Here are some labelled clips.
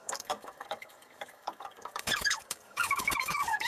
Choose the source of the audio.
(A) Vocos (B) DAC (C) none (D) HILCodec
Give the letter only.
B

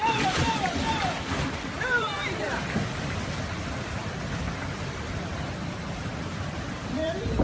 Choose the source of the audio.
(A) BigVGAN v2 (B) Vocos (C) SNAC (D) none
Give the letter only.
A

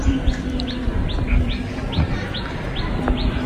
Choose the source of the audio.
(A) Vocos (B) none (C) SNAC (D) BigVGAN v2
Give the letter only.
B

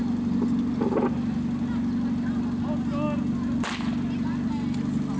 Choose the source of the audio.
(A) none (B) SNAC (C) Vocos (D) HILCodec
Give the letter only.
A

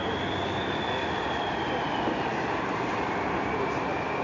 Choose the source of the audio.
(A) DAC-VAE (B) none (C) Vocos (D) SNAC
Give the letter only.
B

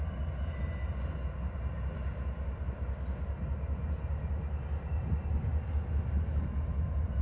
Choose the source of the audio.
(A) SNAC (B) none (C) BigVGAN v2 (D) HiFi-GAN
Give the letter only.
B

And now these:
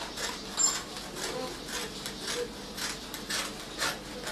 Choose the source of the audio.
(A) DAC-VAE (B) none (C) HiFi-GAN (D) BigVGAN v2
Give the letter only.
B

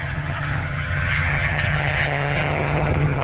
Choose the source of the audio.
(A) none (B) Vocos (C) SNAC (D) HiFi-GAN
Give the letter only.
D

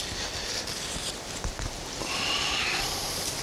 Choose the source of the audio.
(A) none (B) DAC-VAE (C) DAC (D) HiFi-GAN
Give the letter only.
A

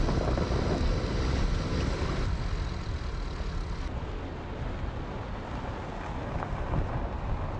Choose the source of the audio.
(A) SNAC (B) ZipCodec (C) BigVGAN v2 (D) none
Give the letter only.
D